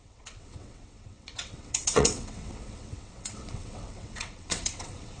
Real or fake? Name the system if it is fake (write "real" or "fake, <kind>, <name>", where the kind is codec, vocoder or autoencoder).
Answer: fake, vocoder, WaveNeXt